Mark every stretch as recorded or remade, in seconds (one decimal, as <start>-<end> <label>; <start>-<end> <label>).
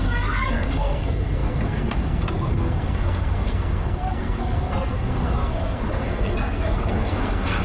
0.0-7.6 remade